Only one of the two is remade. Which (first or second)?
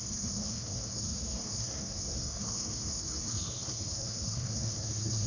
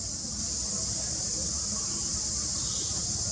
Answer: first